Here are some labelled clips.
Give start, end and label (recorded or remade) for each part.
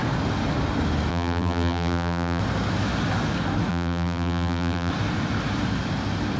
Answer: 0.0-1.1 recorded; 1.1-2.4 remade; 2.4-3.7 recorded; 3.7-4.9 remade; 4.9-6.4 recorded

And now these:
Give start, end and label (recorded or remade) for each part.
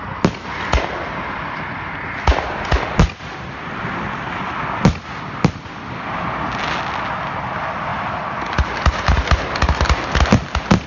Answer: 0.0-10.9 recorded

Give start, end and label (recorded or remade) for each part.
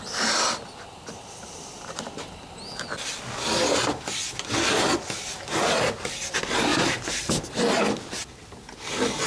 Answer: 0.0-6.7 recorded; 6.7-7.3 remade; 7.3-9.3 recorded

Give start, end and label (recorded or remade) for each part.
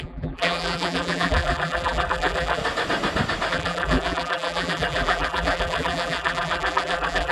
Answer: 0.0-2.6 remade; 2.6-3.5 recorded; 3.5-7.3 remade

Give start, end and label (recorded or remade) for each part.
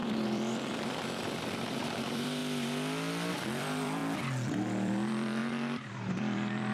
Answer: 0.0-2.4 remade; 2.4-3.3 recorded; 3.3-4.0 remade; 4.0-4.6 recorded; 4.6-6.7 remade